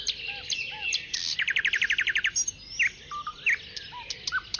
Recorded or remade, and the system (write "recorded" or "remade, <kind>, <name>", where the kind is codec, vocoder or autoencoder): recorded